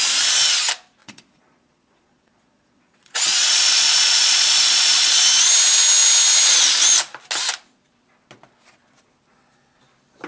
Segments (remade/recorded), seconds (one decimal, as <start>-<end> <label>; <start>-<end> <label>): 0.0-1.0 recorded; 1.0-5.2 remade; 5.2-10.3 recorded